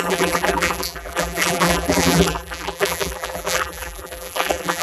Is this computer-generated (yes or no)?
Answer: yes